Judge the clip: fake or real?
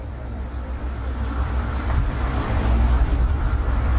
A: fake